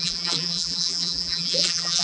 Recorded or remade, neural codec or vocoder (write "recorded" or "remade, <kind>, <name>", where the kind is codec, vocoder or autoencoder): remade, vocoder, BigVGAN v2